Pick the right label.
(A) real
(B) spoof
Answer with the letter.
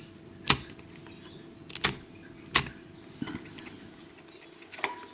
A